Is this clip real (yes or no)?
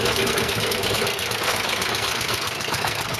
no